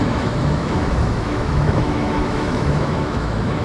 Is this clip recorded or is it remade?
remade